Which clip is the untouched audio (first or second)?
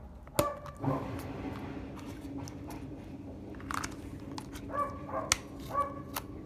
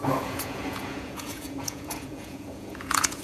first